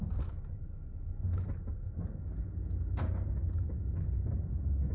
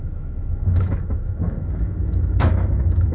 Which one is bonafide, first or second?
first